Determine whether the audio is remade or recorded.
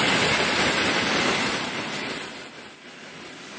recorded